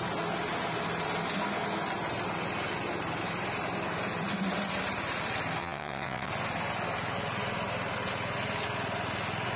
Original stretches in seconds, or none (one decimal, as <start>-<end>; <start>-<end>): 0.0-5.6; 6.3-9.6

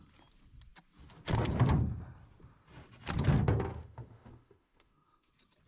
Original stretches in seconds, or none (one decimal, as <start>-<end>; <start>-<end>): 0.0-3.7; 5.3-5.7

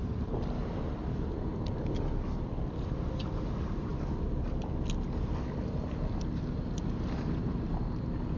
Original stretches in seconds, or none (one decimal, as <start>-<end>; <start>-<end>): 0.0-1.0; 3.4-8.4

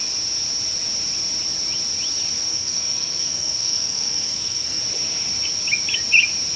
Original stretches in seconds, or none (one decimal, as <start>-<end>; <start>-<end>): 0.0-2.5; 4.8-6.6